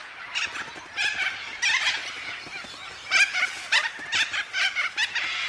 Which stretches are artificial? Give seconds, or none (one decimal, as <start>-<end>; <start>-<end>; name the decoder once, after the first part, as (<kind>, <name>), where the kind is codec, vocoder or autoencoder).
none